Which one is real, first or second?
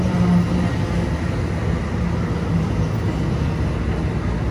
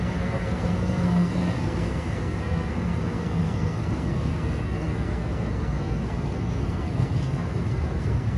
first